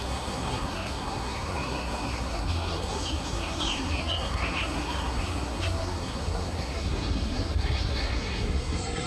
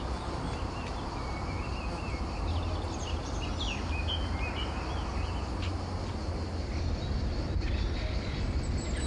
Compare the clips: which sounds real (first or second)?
second